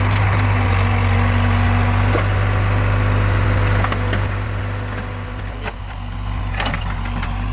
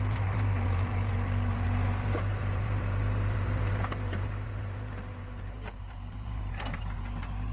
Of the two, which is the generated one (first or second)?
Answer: second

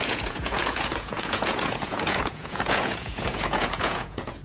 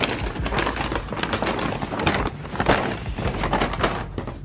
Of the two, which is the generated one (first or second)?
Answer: first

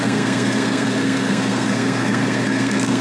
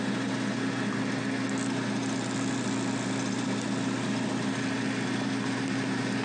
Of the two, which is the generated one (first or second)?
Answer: first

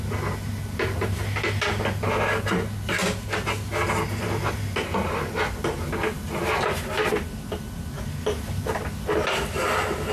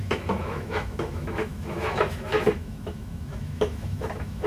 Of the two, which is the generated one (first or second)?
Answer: second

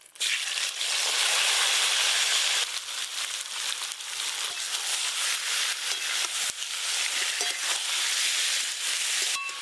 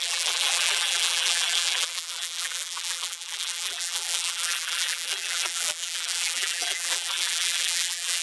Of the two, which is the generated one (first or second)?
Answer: second